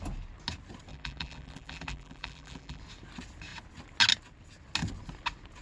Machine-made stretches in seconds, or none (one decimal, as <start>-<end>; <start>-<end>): 0.9-2.8